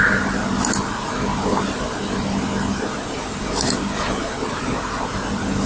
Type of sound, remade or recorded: recorded